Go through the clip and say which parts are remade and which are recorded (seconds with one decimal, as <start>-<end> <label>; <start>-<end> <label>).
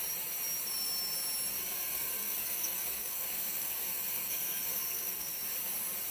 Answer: 0.0-1.6 recorded; 1.6-5.3 remade; 5.3-6.1 recorded